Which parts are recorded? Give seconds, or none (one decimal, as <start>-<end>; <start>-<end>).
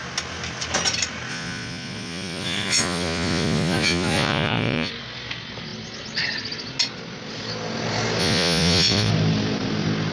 0.0-1.3; 4.9-8.2; 9.1-10.1